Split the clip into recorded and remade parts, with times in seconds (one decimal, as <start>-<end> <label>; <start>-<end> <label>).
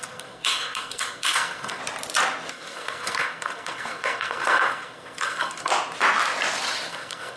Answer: 0.0-1.8 remade; 1.8-2.5 recorded; 2.5-5.7 remade; 5.7-6.9 recorded; 6.9-7.4 remade